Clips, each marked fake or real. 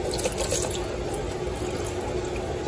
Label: real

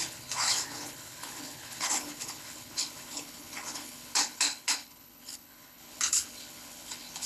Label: fake